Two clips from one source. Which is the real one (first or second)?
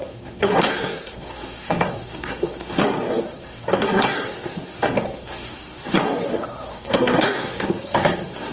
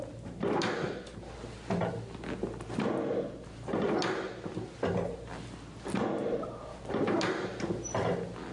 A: second